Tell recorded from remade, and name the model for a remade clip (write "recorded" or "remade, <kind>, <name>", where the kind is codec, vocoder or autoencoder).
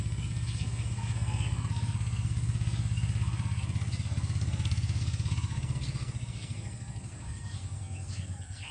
remade, codec, SNAC